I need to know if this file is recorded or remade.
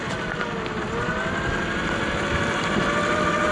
recorded